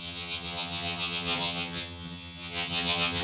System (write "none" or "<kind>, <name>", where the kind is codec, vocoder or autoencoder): vocoder, HiFi-GAN